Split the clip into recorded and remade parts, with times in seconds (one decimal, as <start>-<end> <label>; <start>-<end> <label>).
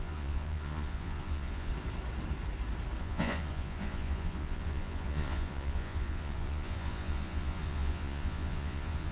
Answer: 0.0-1.7 remade; 1.7-3.0 recorded; 3.0-9.1 remade